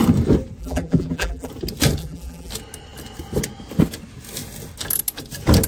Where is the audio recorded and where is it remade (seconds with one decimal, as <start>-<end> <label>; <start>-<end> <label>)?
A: 0.0-0.6 recorded; 0.6-1.5 remade; 1.5-2.0 recorded; 2.0-2.5 remade; 2.5-5.7 recorded